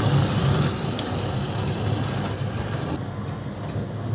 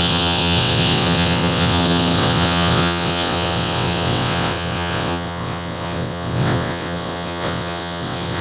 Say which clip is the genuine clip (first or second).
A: first